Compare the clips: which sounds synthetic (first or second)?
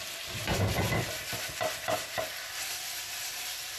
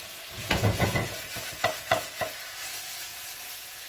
second